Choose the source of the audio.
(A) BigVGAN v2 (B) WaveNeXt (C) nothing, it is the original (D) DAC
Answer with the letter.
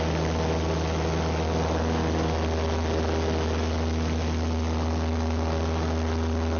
C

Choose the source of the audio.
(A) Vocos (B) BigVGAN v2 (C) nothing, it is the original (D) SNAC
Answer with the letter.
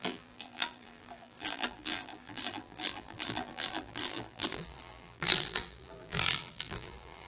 B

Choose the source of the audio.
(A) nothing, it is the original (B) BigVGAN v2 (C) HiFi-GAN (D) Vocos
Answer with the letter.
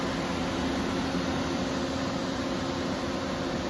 A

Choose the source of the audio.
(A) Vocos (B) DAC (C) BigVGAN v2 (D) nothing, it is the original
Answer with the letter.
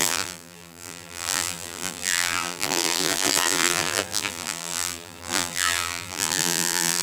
C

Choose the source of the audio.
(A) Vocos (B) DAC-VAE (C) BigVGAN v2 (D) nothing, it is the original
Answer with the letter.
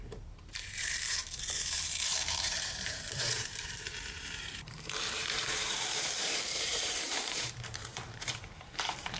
C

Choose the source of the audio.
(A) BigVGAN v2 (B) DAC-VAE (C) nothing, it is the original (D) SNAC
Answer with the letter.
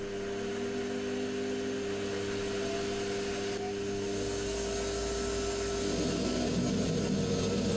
C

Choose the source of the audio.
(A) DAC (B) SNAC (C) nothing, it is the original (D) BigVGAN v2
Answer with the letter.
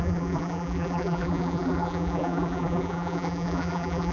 D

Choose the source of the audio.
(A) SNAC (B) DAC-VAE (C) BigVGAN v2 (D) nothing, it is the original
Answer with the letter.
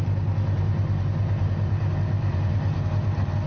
D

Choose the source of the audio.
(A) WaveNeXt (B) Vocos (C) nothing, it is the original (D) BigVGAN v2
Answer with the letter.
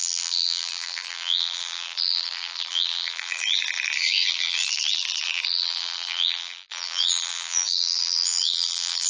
D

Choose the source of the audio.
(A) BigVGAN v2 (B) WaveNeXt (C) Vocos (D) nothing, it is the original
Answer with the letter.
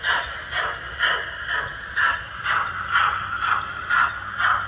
A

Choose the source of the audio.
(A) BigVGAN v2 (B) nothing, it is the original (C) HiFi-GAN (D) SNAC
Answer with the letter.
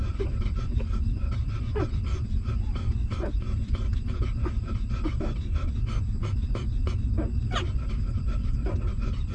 A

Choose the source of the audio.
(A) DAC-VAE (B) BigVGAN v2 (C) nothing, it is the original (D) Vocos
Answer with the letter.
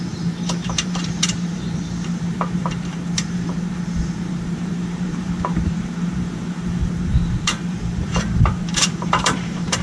B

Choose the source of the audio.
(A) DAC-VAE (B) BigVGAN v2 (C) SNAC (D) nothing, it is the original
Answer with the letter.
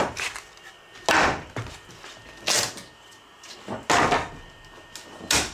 D